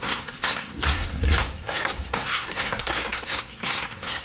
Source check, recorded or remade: remade